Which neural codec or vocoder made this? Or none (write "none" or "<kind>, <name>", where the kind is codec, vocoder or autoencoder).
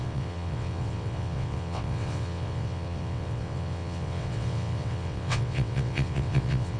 vocoder, WaveNeXt